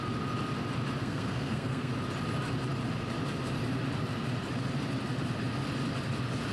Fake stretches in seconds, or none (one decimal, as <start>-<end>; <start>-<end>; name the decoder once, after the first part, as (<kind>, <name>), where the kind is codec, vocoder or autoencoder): 1.0-1.9 (codec, SNAC)